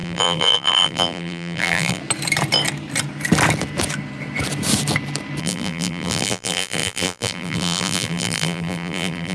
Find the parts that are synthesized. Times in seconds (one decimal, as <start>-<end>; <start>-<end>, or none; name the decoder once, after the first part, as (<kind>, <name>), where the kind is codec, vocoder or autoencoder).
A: 0.0-2.0 (vocoder, BigVGAN v2); 5.4-9.3